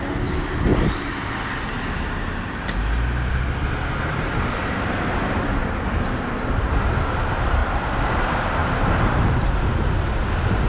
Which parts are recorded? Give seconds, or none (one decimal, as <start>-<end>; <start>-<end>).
0.0-0.7; 1.3-7.6; 8.2-8.6; 9.6-10.7